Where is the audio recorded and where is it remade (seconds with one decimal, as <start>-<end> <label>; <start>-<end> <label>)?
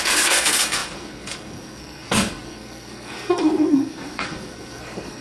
0.0-5.2 remade